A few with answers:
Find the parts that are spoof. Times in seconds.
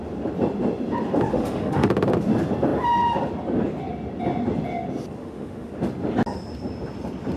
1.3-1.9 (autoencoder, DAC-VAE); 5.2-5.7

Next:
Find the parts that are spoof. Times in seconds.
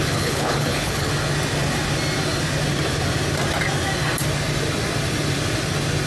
0.0-1.1 (codec, HILCodec)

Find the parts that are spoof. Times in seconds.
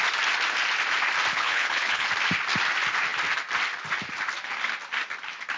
1.3-2.1 (codec, HILCodec)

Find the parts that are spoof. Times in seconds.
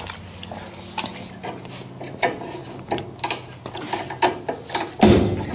none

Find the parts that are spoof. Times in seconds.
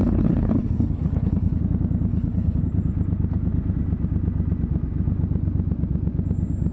0.0-1.6 (codec, HILCodec); 2.1-2.6